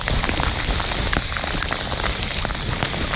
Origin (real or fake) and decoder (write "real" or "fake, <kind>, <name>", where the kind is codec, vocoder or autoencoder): real